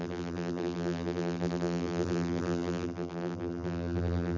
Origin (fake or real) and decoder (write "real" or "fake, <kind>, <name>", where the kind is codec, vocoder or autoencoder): fake, vocoder, BigVGAN v2